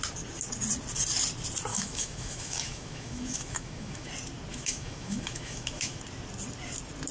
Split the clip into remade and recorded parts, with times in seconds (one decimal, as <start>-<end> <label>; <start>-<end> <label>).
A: 0.0-1.7 recorded; 1.7-4.1 remade; 4.1-4.5 recorded; 4.5-6.0 remade; 6.0-7.1 recorded